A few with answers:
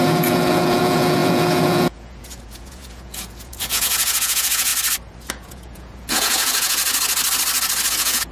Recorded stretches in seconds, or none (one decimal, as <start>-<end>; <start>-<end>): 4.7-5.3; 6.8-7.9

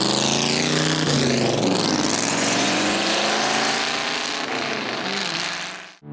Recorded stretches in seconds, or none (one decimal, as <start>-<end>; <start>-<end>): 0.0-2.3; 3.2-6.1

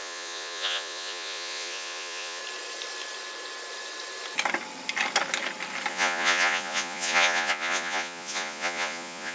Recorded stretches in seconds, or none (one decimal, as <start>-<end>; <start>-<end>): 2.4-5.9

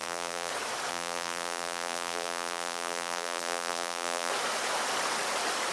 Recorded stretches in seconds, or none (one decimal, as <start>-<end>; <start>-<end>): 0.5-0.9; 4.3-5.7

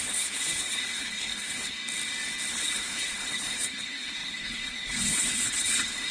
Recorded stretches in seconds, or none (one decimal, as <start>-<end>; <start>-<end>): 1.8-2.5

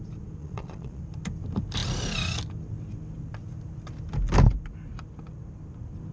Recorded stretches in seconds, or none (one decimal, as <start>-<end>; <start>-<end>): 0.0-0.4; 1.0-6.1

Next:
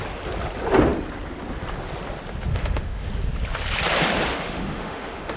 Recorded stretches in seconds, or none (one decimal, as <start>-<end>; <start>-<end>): 0.0-2.5; 3.1-4.3

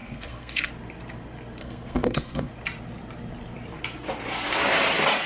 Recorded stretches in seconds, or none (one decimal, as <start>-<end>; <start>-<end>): 0.7-1.6; 2.5-5.3